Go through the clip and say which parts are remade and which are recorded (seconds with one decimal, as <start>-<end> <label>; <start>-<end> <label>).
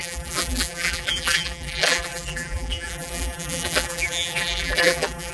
0.0-5.3 remade